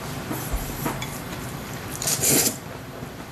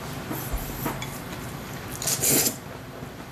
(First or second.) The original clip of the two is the second